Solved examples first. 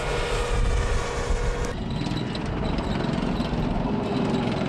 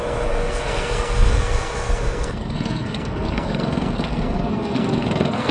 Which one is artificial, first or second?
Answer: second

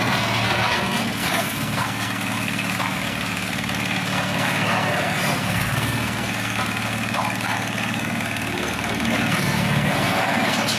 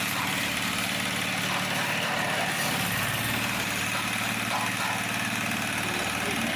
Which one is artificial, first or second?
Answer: first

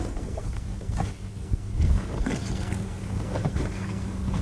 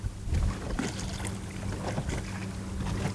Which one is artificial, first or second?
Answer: first